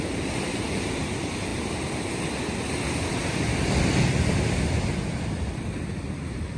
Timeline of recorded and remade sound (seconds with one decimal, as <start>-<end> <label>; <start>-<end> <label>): 0.0-6.6 recorded